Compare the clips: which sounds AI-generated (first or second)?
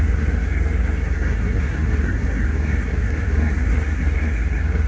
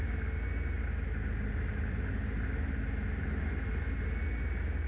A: first